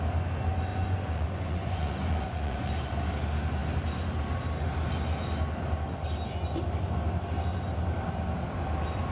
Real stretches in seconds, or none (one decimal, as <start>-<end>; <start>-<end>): 0.0-0.7; 2.7-9.1